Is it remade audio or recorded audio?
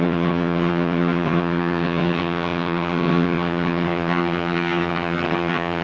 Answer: remade